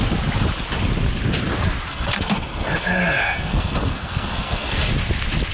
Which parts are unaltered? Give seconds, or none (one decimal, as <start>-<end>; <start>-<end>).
0.0-1.9; 4.9-5.5